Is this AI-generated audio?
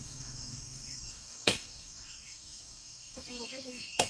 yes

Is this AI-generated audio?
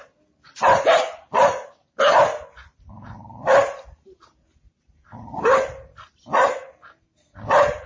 no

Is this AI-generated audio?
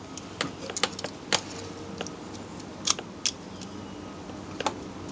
no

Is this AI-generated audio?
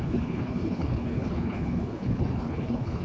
yes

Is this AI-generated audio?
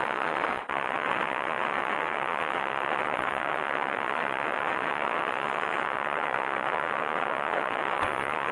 yes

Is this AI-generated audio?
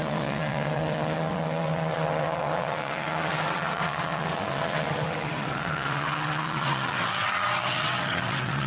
yes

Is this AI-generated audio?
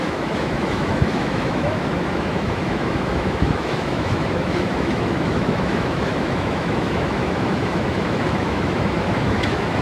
yes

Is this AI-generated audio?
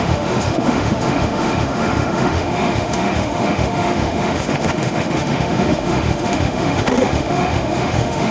yes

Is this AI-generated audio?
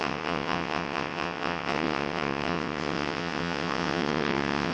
yes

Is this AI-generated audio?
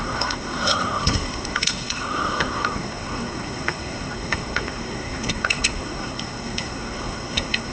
yes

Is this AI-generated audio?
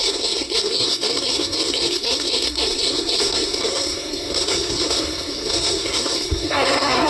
yes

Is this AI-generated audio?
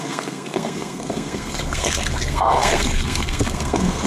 yes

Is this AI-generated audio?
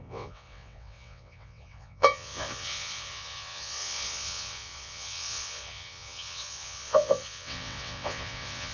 yes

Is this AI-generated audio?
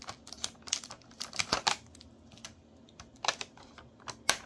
no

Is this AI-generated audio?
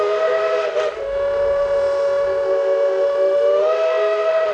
yes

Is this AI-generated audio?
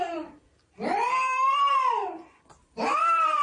yes